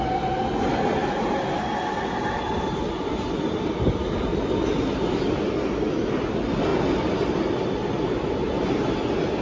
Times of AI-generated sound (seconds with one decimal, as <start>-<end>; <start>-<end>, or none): none